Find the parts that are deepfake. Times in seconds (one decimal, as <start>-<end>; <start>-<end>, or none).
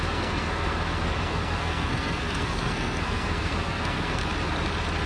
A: 0.0-4.2